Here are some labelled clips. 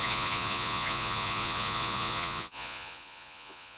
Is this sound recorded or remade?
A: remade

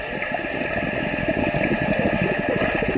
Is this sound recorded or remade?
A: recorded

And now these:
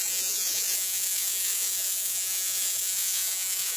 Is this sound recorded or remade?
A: remade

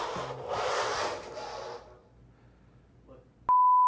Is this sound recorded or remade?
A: recorded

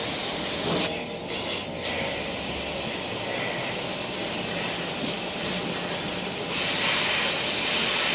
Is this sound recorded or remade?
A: recorded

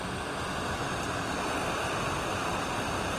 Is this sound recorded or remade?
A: recorded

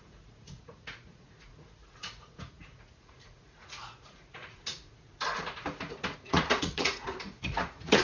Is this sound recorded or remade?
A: remade